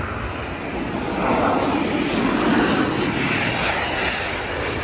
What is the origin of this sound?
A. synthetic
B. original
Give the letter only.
B